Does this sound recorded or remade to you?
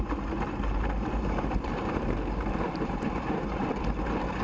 remade